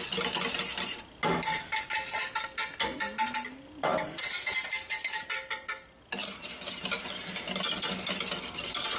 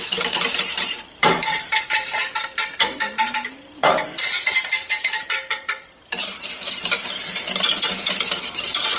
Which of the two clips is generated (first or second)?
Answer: second